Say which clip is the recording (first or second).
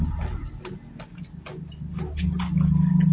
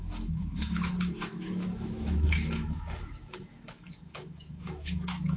first